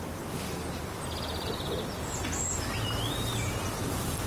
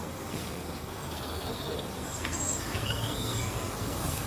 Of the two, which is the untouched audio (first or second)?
first